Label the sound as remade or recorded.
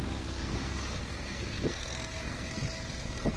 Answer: remade